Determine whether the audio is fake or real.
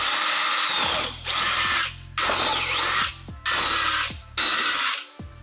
real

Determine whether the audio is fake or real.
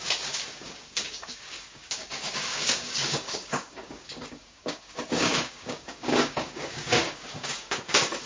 fake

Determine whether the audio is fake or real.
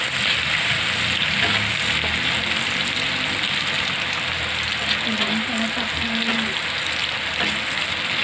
real